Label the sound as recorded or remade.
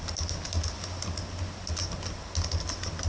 recorded